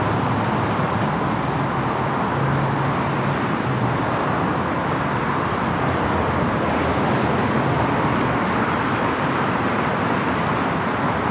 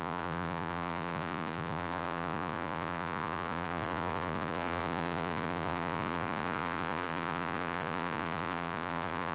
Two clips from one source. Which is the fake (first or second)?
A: second